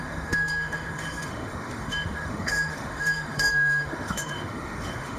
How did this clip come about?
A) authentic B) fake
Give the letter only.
B